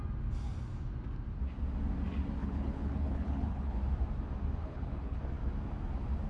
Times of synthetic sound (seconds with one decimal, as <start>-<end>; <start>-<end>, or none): 2.4-3.8; 4.6-5.2